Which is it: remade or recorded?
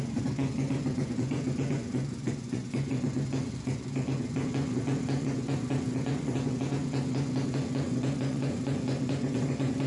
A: remade